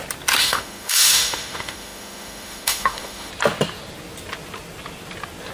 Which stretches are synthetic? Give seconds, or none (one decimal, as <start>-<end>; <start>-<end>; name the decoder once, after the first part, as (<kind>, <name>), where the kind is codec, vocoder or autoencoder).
0.4-3.3 (autoencoder, DAC-VAE)